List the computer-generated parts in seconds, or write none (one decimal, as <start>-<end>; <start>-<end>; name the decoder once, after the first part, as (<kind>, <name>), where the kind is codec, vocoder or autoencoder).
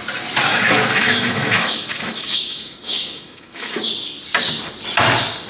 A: 0.5-3.8 (autoencoder, DAC-VAE)